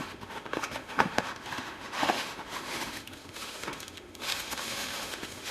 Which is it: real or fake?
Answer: fake